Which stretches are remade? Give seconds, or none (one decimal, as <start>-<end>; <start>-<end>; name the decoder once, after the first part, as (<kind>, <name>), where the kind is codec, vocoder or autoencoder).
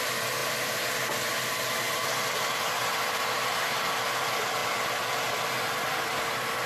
4.6-5.1 (vocoder, BigVGAN v2)